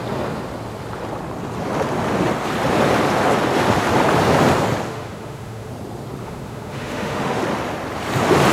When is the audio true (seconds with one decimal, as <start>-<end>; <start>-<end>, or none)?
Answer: 0.0-4.9; 5.7-6.2; 7.4-8.5